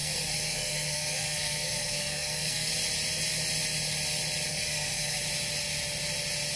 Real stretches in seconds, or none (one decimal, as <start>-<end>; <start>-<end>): 2.7-4.5; 5.2-6.6